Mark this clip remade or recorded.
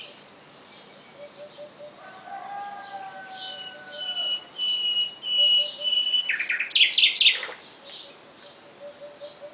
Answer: recorded